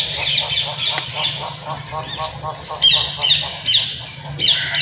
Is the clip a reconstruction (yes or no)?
no